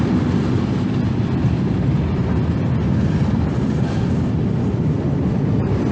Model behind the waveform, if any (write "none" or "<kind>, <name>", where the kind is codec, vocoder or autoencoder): none